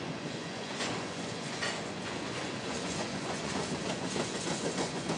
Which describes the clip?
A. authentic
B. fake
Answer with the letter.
B